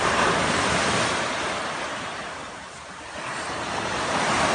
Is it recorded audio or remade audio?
remade